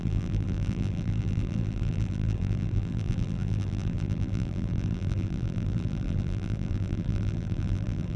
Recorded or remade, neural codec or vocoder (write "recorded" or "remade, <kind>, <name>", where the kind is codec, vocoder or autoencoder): remade, vocoder, BigVGAN v2